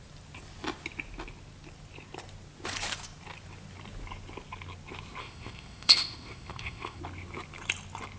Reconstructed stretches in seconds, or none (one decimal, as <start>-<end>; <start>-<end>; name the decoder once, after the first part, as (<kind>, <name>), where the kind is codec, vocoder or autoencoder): 5.2-7.0 (codec, ZipCodec)